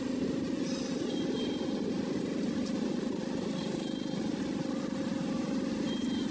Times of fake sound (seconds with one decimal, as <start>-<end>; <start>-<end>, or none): none